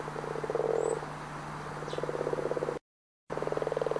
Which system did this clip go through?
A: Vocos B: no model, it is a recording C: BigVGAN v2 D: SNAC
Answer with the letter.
B